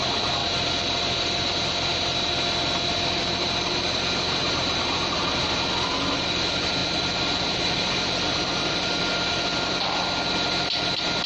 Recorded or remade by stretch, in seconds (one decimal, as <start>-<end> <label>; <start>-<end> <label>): 0.0-6.8 recorded; 6.8-9.0 remade; 9.0-11.3 recorded

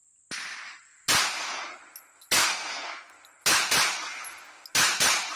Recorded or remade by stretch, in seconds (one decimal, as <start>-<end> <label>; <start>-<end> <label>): 0.0-2.4 recorded; 2.4-3.1 remade; 3.1-5.4 recorded

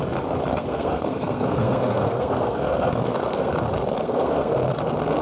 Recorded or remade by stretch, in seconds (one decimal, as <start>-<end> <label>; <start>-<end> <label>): 0.0-0.5 recorded; 0.5-3.5 remade; 3.5-4.0 recorded; 4.0-4.6 remade; 4.6-5.2 recorded

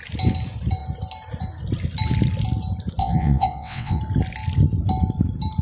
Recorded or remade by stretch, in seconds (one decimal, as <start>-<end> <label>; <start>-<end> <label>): 0.0-3.0 recorded; 3.0-4.0 remade; 4.0-5.6 recorded

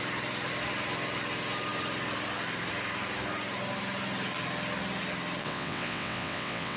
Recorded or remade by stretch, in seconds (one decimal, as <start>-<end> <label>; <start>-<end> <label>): 0.0-5.4 recorded; 5.4-6.8 remade